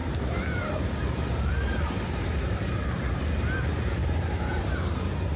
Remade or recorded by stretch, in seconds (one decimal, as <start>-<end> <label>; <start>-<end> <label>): 0.0-3.2 remade; 3.2-4.0 recorded; 4.0-4.6 remade; 4.6-5.4 recorded